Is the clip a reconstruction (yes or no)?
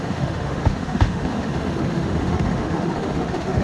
yes